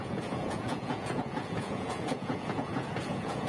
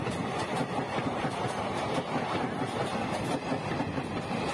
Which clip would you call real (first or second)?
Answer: second